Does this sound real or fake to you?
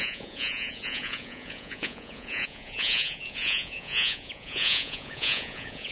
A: fake